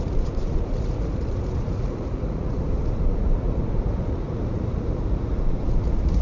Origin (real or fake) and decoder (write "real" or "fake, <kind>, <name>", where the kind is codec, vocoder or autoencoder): fake, vocoder, Vocos